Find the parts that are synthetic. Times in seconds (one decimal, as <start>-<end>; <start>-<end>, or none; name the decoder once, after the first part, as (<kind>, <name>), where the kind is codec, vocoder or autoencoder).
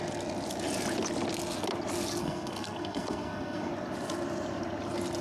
2.2-3.7 (codec, SNAC)